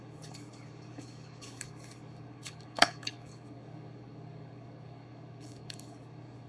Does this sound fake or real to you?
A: fake